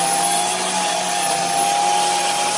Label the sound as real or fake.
real